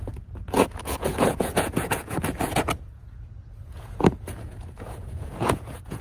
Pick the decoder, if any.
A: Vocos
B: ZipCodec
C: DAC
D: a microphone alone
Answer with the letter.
A